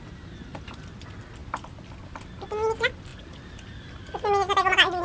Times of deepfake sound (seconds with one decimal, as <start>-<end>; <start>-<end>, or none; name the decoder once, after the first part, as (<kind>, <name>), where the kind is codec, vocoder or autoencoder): none